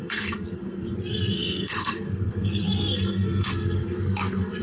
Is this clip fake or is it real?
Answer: fake